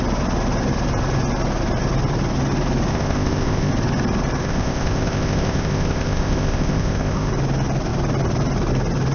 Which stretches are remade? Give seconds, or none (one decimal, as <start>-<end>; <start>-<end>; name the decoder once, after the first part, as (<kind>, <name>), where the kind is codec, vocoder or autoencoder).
2.9-3.7 (codec, ZipCodec); 4.4-7.3